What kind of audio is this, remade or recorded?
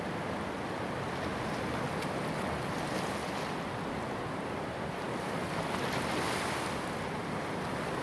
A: recorded